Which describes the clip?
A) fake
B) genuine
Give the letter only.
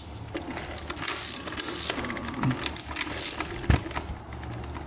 B